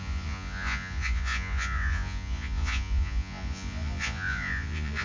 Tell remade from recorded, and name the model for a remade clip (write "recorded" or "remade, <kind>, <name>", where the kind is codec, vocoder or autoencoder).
remade, vocoder, Vocos